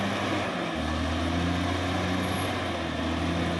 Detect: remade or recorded recorded